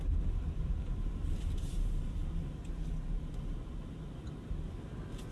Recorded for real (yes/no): yes